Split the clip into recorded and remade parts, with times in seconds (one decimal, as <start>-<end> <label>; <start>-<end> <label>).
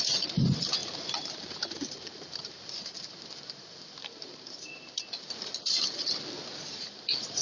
0.0-6.0 remade; 6.0-6.7 recorded; 6.7-7.4 remade